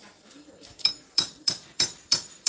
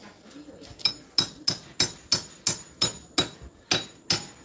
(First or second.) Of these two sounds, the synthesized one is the first